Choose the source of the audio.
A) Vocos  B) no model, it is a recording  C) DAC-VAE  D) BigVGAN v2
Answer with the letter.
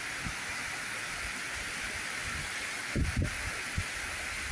B